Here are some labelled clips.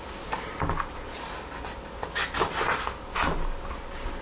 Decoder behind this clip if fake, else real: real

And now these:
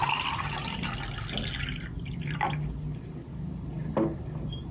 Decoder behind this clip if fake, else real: real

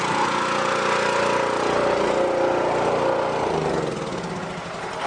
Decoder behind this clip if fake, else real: real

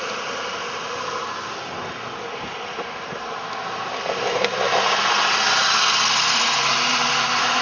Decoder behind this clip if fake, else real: real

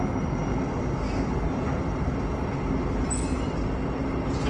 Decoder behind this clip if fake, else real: real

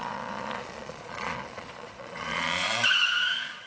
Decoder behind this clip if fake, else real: fake, vocoder, Vocos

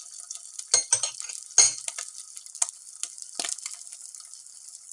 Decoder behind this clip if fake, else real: real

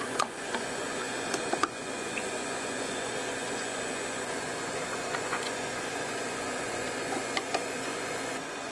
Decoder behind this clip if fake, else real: fake, vocoder, Vocos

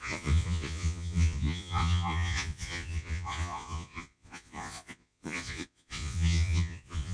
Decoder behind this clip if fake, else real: fake, vocoder, Vocos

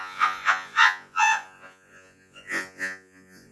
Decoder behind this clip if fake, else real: fake, vocoder, Vocos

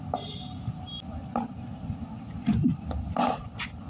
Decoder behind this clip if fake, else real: real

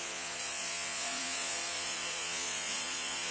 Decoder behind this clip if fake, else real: fake, vocoder, Vocos